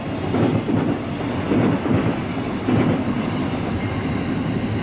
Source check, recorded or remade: recorded